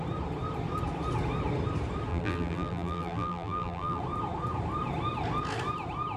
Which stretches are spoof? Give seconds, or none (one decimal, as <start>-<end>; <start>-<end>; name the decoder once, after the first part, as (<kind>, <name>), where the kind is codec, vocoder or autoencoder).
2.1-4.0 (vocoder, BigVGAN v2)